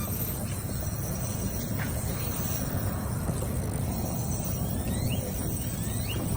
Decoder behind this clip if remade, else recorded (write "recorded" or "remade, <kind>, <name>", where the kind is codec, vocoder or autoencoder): remade, vocoder, Vocos